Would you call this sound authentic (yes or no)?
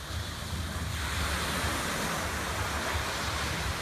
yes